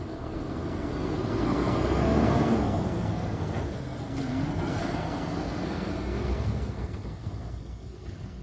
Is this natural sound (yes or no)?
no